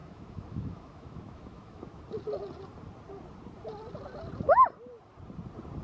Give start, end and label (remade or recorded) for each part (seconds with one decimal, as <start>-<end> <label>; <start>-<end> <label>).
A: 0.0-2.0 remade; 2.0-5.8 recorded